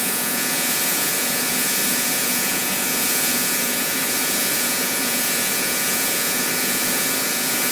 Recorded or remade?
remade